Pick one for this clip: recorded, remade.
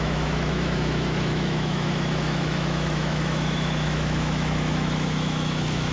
remade